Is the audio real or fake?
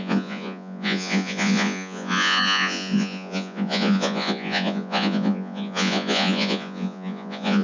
fake